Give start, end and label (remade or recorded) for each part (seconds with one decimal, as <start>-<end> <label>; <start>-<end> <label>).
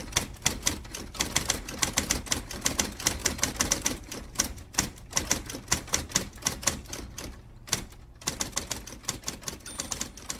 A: 0.0-3.2 recorded; 3.2-5.2 remade; 5.2-10.4 recorded